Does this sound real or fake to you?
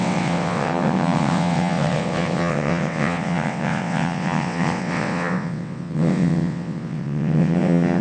fake